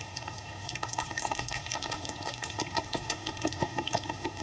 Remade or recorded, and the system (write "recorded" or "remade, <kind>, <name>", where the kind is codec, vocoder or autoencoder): remade, codec, SNAC